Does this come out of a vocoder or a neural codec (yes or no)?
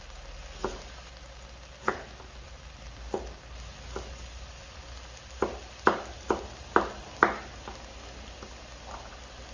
no